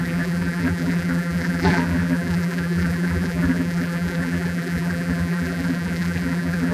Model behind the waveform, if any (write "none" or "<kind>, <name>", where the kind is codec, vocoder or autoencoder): vocoder, BigVGAN v2